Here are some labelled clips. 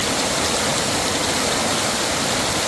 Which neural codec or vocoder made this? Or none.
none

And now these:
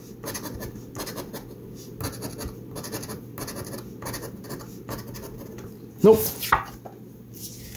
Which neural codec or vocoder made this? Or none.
none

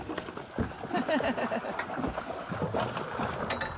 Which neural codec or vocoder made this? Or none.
none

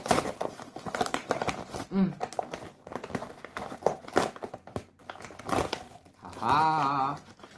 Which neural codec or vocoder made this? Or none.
none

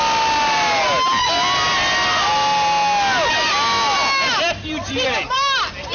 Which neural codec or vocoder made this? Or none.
none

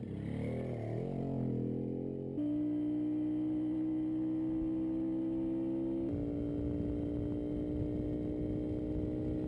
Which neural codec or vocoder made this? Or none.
none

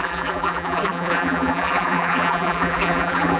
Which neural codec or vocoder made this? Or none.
vocoder, BigVGAN v2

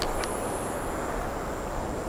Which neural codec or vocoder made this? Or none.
none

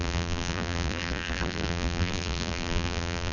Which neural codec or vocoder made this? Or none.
vocoder, BigVGAN v2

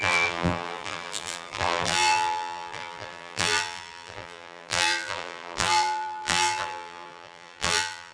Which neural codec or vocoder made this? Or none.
vocoder, BigVGAN v2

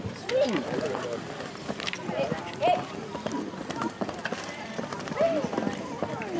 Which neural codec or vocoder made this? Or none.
none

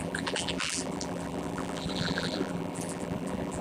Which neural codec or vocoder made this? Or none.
vocoder, BigVGAN v2